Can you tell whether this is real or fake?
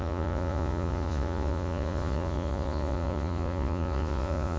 fake